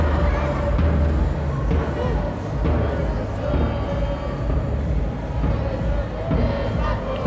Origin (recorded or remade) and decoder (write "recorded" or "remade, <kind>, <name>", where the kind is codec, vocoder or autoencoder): recorded